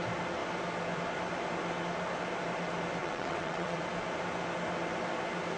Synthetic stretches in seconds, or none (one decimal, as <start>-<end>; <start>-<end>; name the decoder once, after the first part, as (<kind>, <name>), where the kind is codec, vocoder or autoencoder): 3.0-3.8 (vocoder, WaveNeXt)